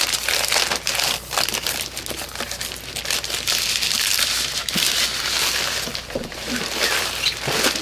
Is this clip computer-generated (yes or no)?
no